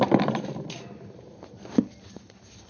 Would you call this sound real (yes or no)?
yes